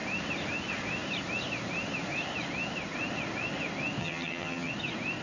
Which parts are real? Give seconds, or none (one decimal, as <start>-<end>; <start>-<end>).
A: 0.0-4.0; 4.7-5.2